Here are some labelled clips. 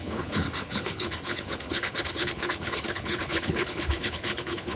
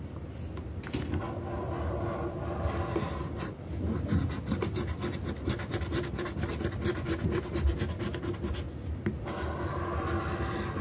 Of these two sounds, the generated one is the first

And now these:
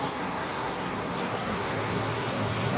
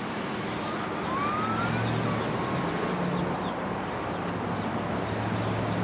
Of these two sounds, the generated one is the first